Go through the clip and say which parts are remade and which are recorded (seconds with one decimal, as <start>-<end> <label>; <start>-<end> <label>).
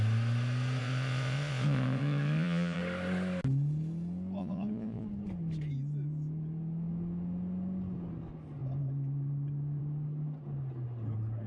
0.0-0.8 recorded; 0.8-2.8 remade; 2.8-4.4 recorded; 4.4-5.1 remade; 5.1-11.5 recorded